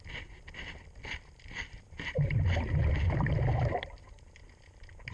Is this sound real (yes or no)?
yes